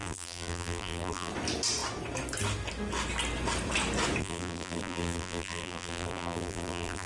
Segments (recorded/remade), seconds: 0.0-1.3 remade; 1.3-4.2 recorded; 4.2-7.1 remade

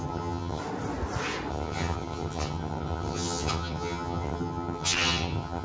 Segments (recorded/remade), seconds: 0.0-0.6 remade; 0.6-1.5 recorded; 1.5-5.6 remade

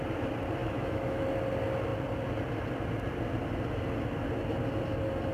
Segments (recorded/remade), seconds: 0.0-0.6 recorded; 0.6-1.2 remade; 1.2-5.3 recorded

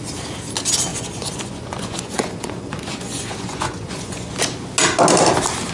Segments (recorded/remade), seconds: 0.0-0.9 recorded; 0.9-4.3 remade; 4.3-5.7 recorded